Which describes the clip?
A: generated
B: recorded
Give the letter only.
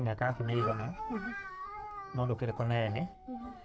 A